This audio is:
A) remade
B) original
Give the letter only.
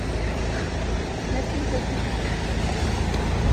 B